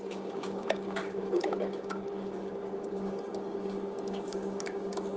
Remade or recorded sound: remade